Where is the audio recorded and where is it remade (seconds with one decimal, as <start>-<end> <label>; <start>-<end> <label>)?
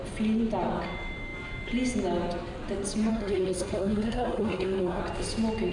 0.0-3.1 recorded; 3.1-5.0 remade; 5.0-5.7 recorded